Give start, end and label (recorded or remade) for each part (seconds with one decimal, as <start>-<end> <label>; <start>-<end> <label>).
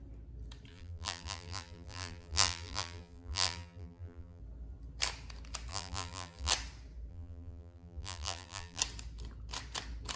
0.0-0.7 recorded; 0.7-4.4 remade; 4.4-5.7 recorded; 5.7-6.5 remade; 6.5-7.1 recorded; 7.1-8.8 remade; 8.8-10.2 recorded